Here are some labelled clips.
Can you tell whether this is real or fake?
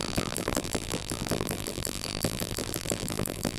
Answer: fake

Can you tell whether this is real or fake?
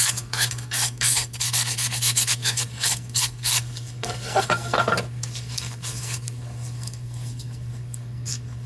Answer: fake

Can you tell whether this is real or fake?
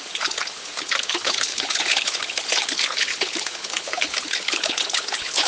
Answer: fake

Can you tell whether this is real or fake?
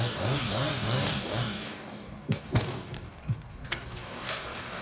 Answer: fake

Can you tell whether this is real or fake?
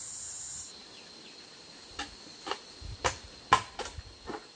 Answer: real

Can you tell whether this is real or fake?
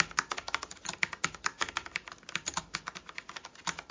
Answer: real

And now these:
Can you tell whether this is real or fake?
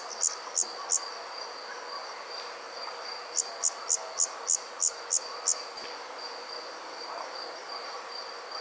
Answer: real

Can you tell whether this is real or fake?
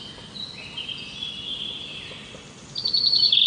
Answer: real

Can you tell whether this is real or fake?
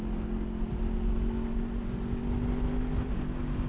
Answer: real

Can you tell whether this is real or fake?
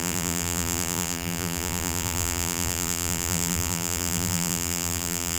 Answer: fake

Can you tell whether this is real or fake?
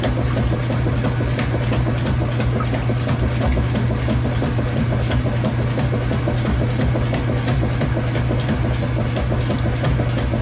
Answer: real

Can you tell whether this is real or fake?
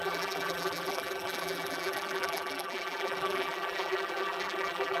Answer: fake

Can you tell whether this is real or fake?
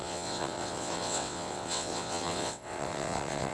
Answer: fake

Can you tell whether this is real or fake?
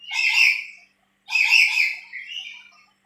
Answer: real